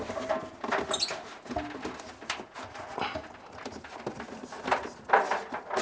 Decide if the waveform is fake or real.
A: real